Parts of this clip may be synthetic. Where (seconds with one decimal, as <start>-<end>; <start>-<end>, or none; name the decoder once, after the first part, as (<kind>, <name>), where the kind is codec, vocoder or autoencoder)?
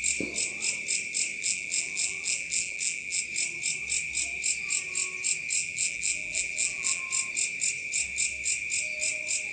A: 1.4-3.2 (vocoder, BigVGAN v2); 5.6-7.0